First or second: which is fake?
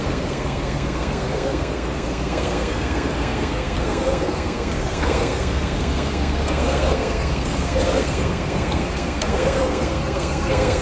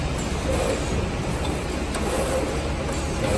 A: first